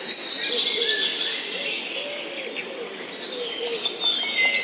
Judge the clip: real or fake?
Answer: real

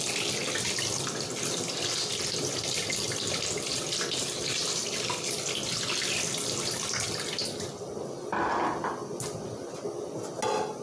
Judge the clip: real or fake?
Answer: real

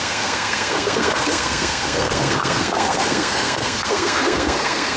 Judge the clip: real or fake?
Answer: fake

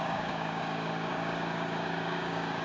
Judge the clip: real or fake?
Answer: fake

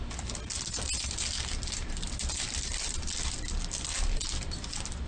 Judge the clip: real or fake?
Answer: real